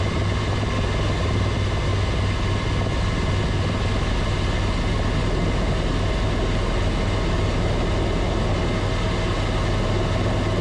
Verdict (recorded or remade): recorded